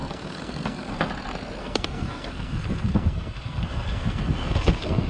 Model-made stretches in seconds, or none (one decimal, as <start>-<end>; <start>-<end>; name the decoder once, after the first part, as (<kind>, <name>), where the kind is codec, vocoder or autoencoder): 0.0-1.1 (codec, SNAC); 1.6-5.1